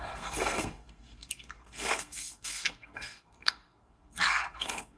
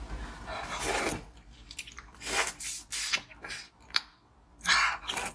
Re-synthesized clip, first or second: first